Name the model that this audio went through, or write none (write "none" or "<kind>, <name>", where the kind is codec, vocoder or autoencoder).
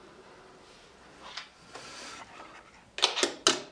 none